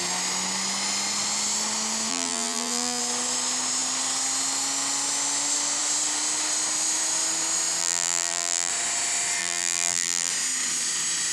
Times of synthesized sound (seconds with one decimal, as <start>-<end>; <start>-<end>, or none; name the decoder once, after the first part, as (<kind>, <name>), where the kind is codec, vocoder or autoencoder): 2.1-3.0 (vocoder, BigVGAN v2); 7.8-8.7; 9.4-10.3